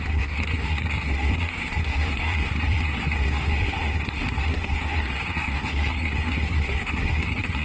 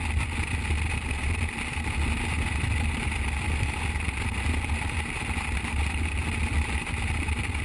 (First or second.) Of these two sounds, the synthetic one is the first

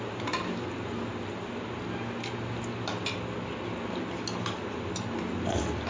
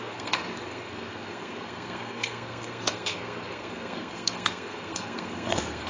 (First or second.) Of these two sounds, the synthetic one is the second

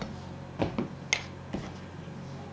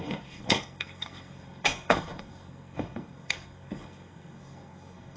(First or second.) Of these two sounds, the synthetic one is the second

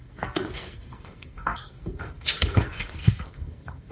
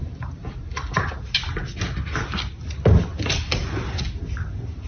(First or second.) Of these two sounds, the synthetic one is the first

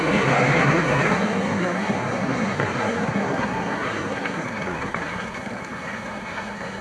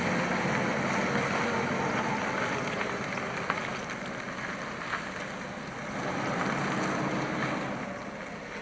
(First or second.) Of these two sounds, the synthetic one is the first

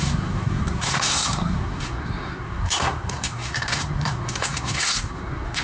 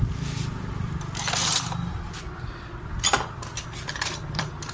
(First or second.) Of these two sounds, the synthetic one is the first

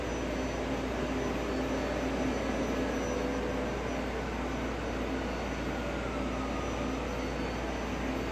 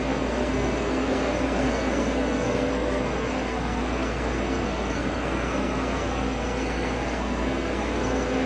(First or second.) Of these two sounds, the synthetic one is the second